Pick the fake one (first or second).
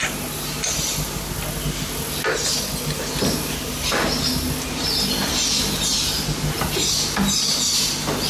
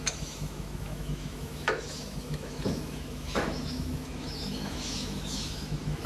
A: second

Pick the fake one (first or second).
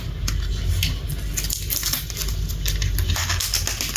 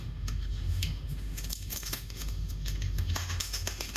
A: second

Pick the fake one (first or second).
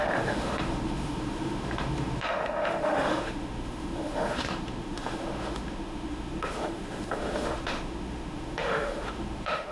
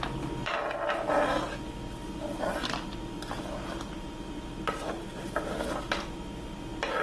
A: first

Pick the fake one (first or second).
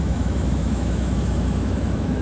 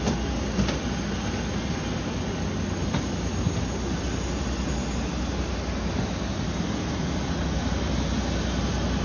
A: first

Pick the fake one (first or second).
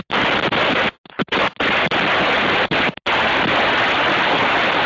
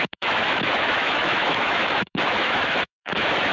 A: second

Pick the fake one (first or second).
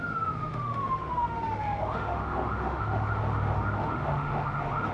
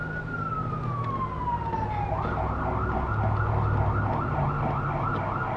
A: first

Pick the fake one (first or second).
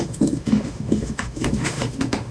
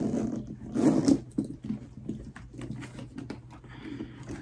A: first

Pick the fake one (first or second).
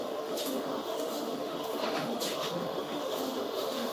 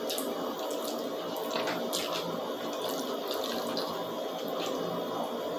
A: first